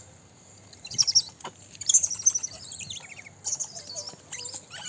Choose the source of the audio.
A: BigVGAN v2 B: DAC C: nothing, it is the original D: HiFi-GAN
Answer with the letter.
C